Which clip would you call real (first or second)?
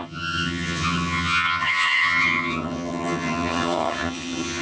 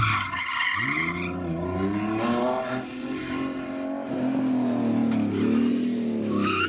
second